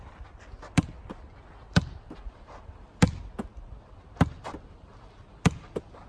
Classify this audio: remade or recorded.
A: recorded